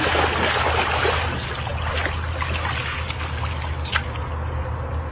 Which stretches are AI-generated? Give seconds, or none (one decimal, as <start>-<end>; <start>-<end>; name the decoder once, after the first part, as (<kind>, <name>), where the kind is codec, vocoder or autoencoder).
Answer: none